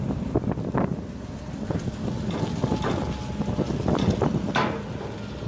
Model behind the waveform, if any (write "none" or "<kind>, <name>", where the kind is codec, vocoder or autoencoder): none